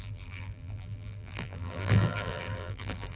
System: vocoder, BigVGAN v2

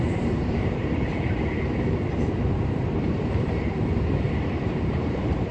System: vocoder, BigVGAN v2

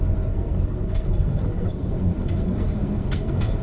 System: codec, SNAC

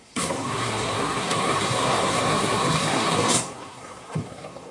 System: codec, SNAC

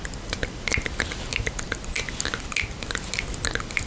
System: none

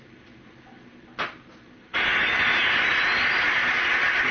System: none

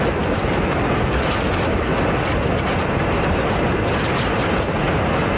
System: none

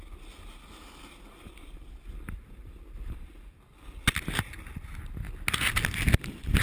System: none